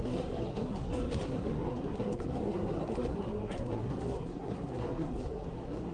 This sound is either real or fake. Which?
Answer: fake